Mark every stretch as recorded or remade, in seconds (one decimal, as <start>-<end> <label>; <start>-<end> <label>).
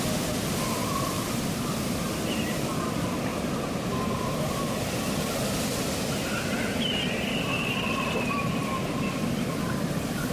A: 0.0-3.3 remade; 3.3-8.0 recorded; 8.0-10.3 remade